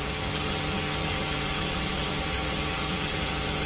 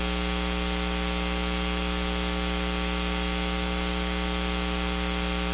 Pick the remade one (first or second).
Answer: first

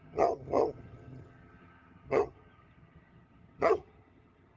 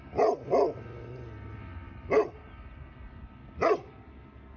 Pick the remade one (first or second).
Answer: first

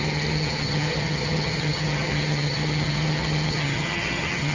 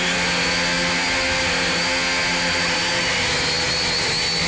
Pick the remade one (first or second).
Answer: first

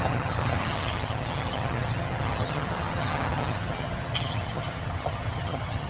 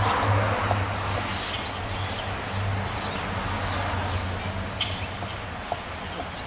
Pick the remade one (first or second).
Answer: first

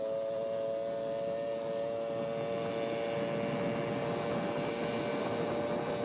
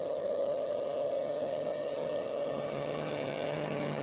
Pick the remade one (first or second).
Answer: second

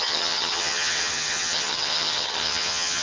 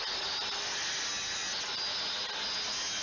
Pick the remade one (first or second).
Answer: first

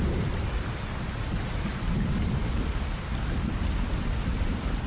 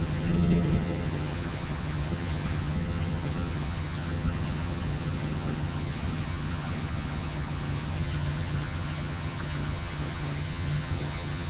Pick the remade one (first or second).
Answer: second